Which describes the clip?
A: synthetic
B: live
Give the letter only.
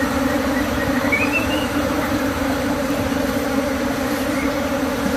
A